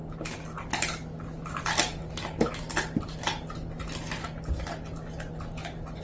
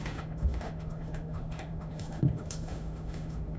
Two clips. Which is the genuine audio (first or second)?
first